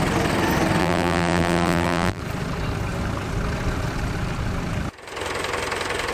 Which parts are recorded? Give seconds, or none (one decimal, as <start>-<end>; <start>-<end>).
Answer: 0.0-0.8; 2.2-6.1